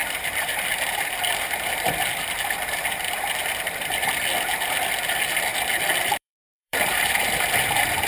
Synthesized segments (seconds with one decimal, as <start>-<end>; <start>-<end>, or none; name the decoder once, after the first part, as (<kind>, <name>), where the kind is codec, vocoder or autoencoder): 0.0-4.2 (vocoder, BigVGAN v2); 5.5-7.3